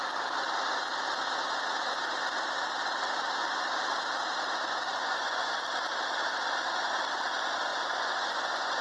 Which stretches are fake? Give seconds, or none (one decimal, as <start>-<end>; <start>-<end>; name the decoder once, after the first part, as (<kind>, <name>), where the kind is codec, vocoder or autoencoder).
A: 4.9-5.5 (vocoder, Vocos); 7.7-8.8